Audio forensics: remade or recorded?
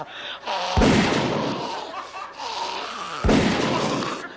recorded